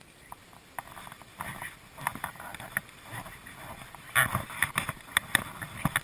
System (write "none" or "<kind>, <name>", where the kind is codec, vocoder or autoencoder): none